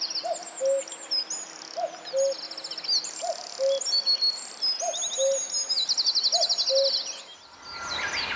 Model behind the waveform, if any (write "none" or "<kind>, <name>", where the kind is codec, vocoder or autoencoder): none